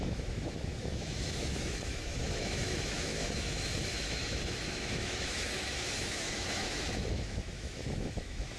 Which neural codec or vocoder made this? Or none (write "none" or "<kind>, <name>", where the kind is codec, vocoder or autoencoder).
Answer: autoencoder, DAC-VAE